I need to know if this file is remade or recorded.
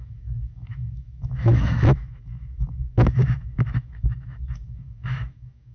remade